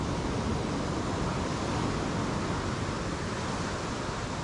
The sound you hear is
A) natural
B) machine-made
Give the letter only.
A